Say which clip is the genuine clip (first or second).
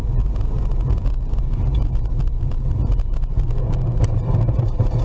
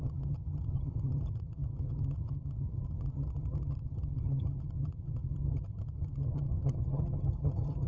first